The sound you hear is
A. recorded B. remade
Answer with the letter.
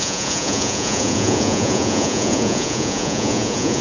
B